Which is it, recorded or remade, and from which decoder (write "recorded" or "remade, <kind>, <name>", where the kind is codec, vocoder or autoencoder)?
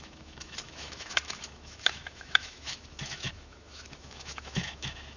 remade, autoencoder, DAC-VAE